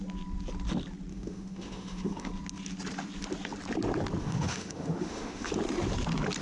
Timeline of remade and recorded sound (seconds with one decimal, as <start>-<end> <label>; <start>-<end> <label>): 0.0-1.1 recorded; 1.1-2.3 remade; 2.3-4.2 recorded; 4.2-5.5 remade; 5.5-6.4 recorded